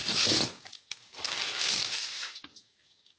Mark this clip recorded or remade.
remade